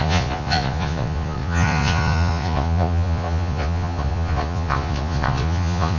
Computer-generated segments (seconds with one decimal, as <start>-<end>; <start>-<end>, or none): 0.0-6.0